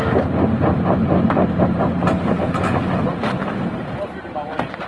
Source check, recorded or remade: recorded